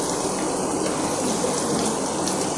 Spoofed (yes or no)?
no